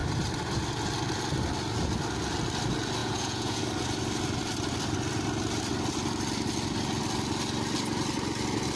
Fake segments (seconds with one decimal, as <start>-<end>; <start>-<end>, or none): 3.0-3.6